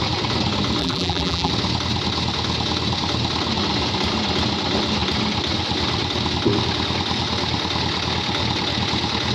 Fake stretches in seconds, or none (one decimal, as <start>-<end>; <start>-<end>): 0.8-1.5